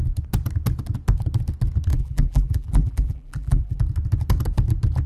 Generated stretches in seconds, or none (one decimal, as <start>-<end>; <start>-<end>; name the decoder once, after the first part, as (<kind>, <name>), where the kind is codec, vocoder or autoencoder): 1.9-3.8 (vocoder, BigVGAN v2)